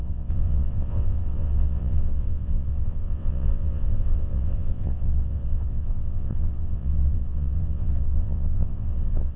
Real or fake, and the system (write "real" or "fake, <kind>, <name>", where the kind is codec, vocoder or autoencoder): fake, vocoder, WaveNeXt